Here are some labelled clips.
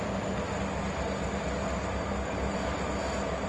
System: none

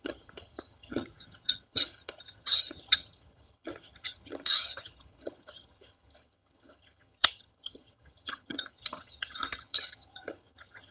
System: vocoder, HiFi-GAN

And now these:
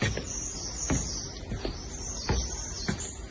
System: none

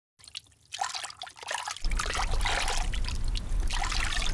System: none